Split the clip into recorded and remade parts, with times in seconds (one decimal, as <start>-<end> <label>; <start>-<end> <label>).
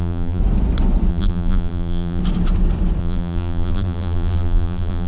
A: 0.0-0.4 remade; 0.4-1.1 recorded; 1.1-2.2 remade; 2.2-3.0 recorded; 3.0-5.1 remade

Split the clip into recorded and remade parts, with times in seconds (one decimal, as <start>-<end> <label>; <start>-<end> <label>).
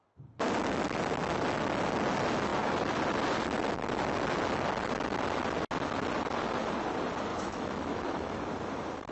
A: 0.0-7.3 recorded; 7.3-8.4 remade; 8.4-9.1 recorded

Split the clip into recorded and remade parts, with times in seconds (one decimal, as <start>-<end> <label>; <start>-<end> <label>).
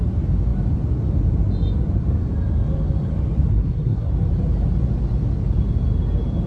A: 0.0-3.5 recorded; 3.5-4.1 remade; 4.1-6.5 recorded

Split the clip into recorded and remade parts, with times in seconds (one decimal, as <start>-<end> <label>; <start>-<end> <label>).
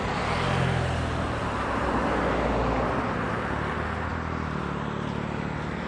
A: 0.0-5.9 recorded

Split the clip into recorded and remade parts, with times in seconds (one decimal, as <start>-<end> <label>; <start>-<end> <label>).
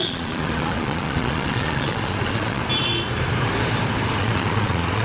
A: 0.0-2.6 remade; 2.6-4.2 recorded; 4.2-5.0 remade